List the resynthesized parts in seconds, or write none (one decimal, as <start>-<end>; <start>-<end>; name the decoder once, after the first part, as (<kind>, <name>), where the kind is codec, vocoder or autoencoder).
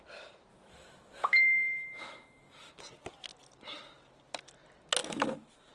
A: 0.5-2.7 (autoencoder, DAC-VAE); 5.0-5.7